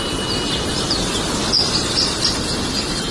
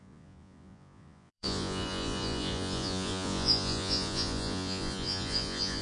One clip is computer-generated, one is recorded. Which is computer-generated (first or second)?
second